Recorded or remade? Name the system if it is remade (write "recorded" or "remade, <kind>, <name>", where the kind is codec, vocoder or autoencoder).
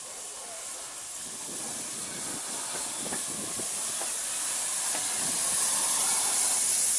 recorded